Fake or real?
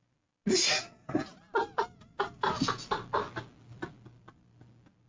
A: real